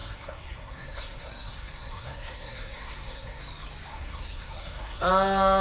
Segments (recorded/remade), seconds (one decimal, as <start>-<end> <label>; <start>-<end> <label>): 0.0-3.4 remade; 3.4-3.9 recorded; 3.9-5.1 remade; 5.1-5.6 recorded